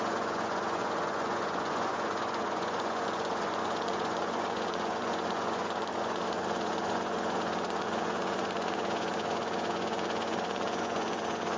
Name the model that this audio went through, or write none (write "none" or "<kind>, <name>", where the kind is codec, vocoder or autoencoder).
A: vocoder, Vocos